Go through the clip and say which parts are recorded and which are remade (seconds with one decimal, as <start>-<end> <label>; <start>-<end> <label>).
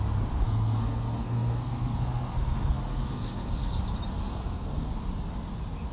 0.0-0.4 recorded; 0.4-3.8 remade; 3.8-4.2 recorded; 4.2-4.9 remade; 4.9-5.9 recorded